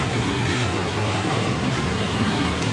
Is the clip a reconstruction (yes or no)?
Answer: yes